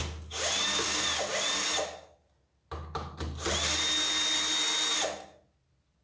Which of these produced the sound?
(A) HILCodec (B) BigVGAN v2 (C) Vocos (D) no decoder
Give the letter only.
D